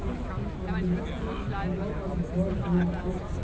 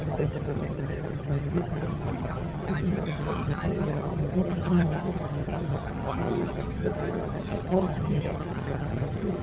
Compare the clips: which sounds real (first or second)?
first